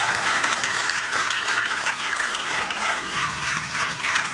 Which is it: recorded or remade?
remade